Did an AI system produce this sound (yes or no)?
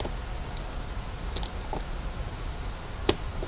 no